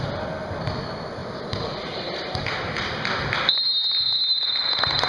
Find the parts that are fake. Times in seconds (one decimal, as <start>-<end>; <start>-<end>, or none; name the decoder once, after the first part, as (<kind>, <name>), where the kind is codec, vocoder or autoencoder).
1.2-3.2 (vocoder, BigVGAN v2); 4.3-5.1